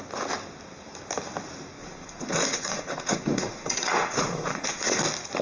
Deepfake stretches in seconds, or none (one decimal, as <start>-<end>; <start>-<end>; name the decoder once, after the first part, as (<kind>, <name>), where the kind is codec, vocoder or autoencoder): 1.8-5.0 (vocoder, Vocos)